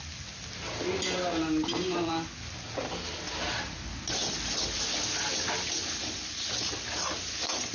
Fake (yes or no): no